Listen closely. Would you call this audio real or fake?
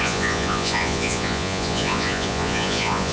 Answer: fake